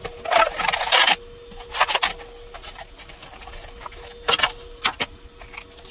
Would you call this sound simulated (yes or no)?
no